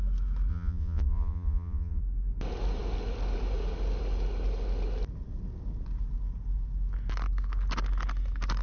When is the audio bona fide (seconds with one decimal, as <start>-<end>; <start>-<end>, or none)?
0.0-0.5; 2.0-8.6